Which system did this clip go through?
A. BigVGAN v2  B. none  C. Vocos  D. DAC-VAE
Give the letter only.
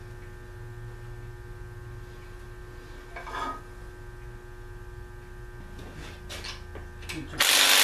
B